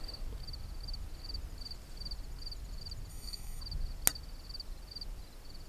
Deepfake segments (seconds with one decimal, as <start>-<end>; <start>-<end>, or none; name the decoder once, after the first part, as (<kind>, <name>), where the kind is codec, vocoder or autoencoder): 3.1-3.6 (codec, DAC)